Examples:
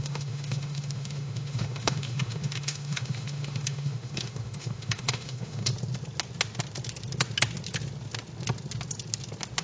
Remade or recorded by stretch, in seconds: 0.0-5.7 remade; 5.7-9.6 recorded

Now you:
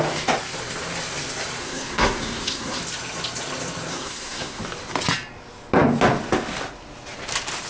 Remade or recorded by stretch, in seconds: 0.0-1.6 recorded; 1.6-2.8 remade; 2.8-3.9 recorded; 3.9-4.6 remade; 4.6-7.7 recorded

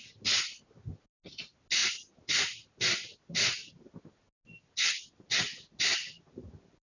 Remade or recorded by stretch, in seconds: 0.0-6.9 recorded

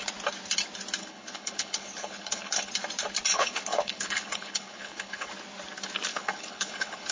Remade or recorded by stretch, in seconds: 0.0-1.0 recorded; 1.0-2.7 remade; 2.7-3.3 recorded; 3.3-5.3 remade; 5.3-6.1 recorded; 6.1-7.1 remade

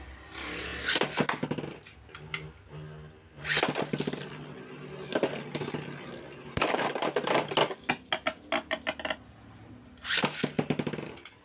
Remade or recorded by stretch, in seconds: 0.0-6.4 recorded; 6.4-7.3 remade; 7.3-11.4 recorded

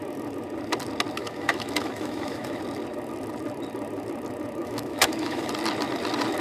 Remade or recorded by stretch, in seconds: 0.0-1.2 recorded; 1.2-2.6 remade; 2.6-4.6 recorded; 4.6-5.5 remade; 5.5-6.4 recorded